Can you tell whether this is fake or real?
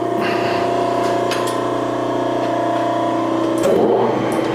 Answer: real